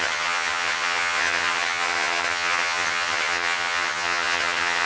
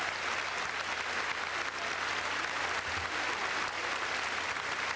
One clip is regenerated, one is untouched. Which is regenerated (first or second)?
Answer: first